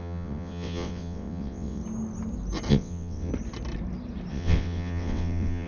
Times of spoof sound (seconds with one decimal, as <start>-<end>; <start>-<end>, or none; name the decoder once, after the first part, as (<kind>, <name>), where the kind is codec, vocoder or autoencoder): 0.0-1.8 (vocoder, WaveNeXt); 2.7-3.3; 4.3-5.7